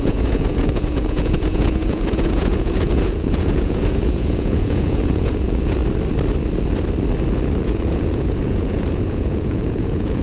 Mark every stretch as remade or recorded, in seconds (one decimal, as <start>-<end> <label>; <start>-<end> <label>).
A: 0.0-5.8 remade; 5.8-7.6 recorded; 7.6-10.2 remade